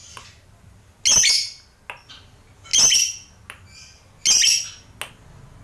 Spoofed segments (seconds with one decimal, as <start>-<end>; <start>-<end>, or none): none